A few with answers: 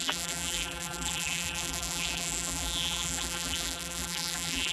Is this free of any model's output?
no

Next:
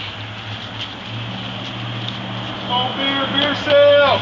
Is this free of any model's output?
yes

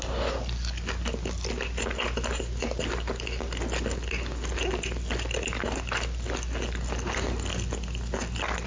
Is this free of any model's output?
yes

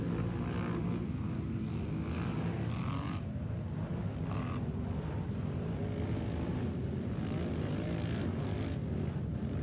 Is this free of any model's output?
yes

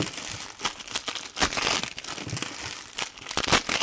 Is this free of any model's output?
yes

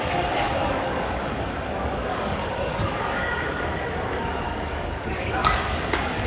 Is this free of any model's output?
no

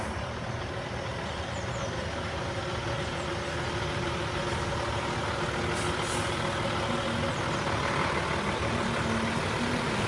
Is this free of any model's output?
yes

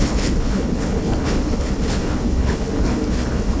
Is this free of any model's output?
no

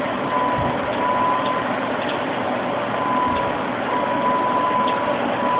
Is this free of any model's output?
yes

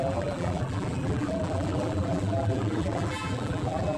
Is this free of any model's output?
no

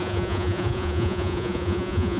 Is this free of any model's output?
no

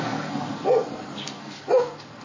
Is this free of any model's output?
no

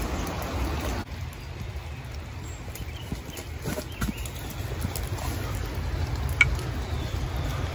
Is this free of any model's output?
yes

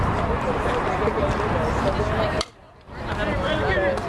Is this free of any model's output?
yes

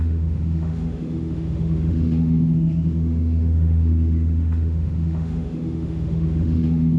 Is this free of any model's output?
no